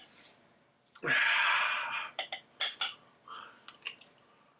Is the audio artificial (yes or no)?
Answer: no